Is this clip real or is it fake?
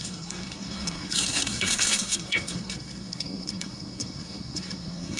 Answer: fake